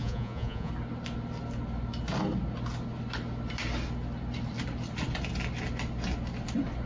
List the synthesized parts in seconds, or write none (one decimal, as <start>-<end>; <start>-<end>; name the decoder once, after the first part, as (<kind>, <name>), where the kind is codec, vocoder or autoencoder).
0.0-0.7 (vocoder, Vocos)